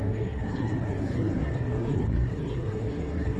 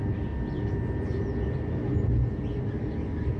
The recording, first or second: second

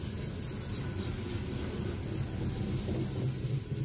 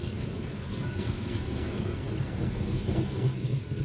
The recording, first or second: first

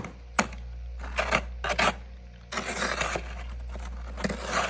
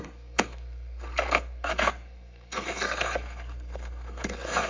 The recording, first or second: first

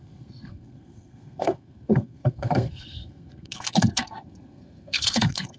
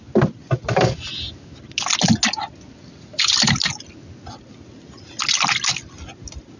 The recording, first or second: second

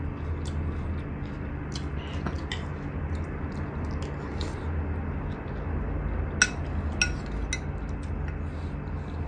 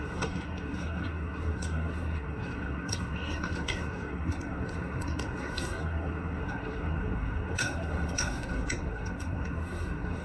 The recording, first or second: first